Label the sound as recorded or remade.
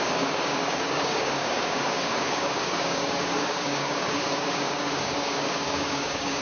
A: remade